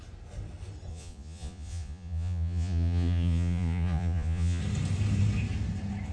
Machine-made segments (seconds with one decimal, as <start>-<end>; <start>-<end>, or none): 0.9-4.6